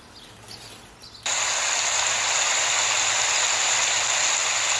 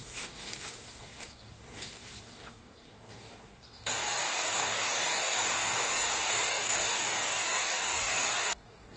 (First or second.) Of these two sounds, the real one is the first